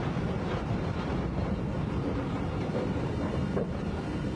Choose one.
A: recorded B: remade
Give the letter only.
B